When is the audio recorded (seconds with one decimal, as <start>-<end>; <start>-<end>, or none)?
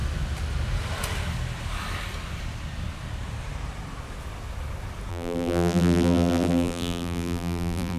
0.0-5.1